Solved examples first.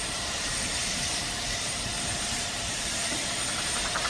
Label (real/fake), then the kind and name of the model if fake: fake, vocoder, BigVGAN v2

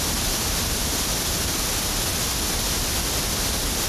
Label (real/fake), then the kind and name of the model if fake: real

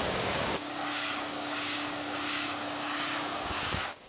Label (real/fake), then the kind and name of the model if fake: fake, codec, DAC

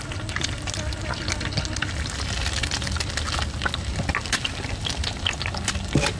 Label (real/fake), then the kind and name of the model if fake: real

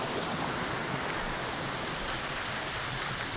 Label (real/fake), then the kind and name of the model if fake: real